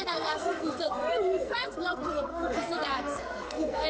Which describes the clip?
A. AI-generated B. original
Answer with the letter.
A